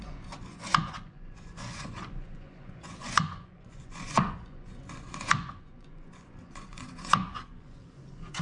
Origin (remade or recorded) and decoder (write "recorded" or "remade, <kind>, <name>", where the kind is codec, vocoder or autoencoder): remade, vocoder, Vocos